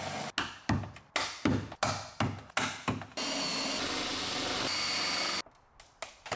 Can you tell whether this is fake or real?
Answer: real